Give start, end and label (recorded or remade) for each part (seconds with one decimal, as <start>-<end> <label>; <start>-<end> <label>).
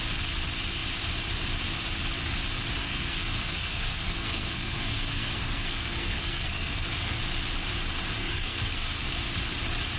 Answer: 0.0-2.8 recorded; 2.8-7.2 remade; 7.2-8.2 recorded; 8.2-9.1 remade; 9.1-10.0 recorded